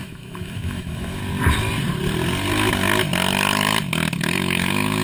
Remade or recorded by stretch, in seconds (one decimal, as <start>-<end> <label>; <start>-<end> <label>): 0.0-1.2 remade; 1.2-4.2 recorded; 4.2-5.0 remade